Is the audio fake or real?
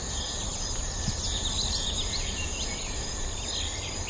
real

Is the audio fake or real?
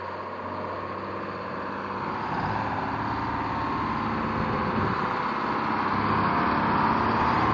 real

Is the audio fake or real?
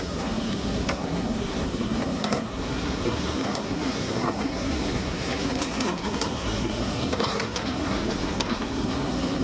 fake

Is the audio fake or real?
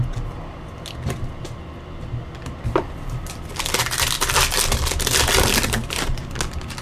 real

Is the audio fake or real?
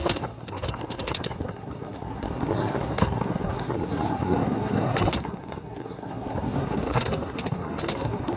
fake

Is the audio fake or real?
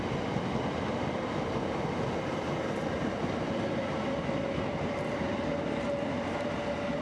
real